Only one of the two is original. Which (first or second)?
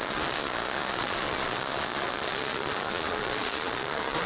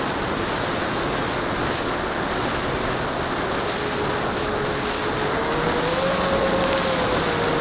second